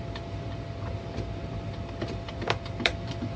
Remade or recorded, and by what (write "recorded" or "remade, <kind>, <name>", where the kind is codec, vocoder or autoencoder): remade, vocoder, BigVGAN v2